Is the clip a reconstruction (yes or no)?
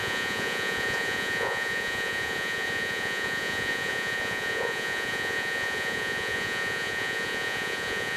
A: yes